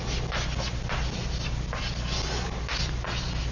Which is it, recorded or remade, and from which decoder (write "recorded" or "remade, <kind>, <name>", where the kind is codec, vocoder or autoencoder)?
recorded